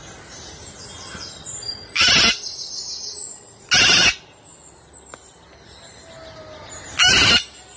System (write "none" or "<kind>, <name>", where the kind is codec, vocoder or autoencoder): none